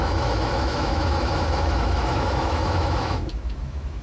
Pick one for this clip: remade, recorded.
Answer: remade